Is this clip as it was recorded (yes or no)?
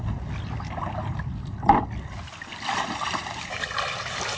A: yes